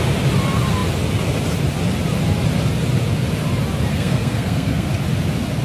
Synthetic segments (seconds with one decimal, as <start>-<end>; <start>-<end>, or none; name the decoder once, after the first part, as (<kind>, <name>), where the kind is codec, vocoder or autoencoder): 3.9-4.9 (codec, SNAC)